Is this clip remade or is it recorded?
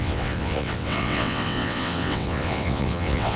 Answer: remade